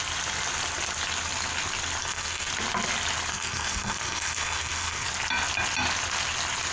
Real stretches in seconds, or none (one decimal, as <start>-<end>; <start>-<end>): 0.0-2.0; 2.5-3.3; 5.1-6.7